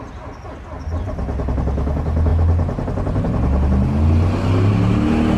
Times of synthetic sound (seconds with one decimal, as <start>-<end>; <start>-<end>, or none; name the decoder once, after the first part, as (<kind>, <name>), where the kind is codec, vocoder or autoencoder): none